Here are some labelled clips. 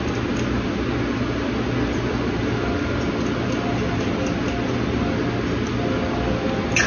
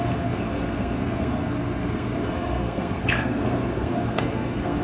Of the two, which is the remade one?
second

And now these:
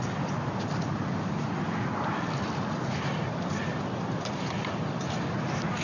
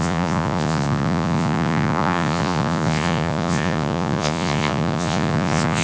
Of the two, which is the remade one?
second